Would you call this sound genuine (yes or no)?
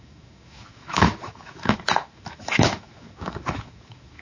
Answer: no